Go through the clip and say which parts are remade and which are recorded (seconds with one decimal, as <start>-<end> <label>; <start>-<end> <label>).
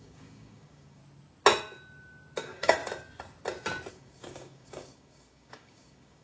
0.0-1.0 remade; 1.0-2.4 recorded; 2.4-2.8 remade; 2.8-3.9 recorded; 3.9-6.2 remade